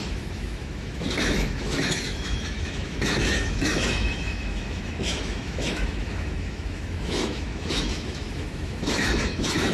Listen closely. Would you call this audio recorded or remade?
remade